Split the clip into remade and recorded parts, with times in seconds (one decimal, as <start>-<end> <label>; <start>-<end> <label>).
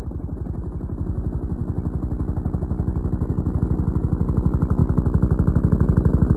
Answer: 0.0-6.4 recorded